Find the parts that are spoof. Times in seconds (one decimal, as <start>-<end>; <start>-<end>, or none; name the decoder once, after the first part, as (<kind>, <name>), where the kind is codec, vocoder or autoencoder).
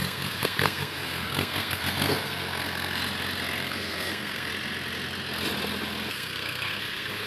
0.0-3.0 (codec, SNAC); 3.6-4.5; 6.1-7.3